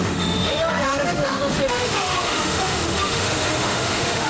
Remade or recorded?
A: remade